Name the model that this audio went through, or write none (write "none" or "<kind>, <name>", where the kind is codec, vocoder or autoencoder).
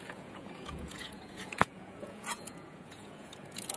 vocoder, Vocos